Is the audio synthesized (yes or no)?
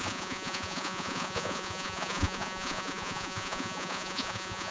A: yes